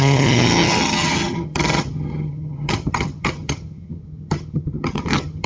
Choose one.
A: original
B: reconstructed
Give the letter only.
B